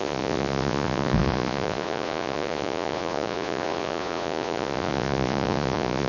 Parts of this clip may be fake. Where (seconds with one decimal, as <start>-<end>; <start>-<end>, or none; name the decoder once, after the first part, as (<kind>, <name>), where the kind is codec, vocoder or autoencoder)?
0.0-6.1 (vocoder, Vocos)